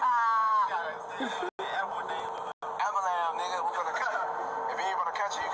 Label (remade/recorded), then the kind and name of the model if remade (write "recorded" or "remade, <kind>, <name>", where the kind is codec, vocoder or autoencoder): recorded